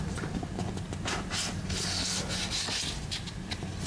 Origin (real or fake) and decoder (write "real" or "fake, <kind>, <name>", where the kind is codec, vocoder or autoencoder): real